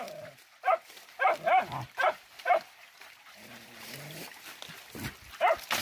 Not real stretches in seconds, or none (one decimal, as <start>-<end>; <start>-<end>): 2.0-4.3